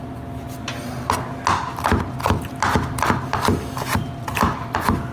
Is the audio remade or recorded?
recorded